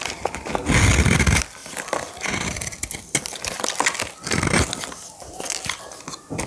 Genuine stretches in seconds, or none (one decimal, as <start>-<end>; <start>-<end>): 0.0-1.6; 3.6-6.5